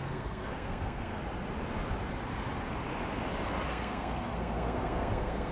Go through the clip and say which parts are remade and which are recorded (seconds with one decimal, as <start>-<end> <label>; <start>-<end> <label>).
0.0-1.1 remade; 1.1-3.7 recorded; 3.7-5.5 remade